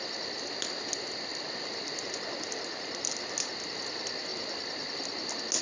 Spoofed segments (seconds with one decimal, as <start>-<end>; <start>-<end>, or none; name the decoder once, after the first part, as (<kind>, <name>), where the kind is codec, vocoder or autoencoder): none